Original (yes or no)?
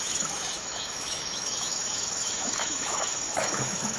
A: no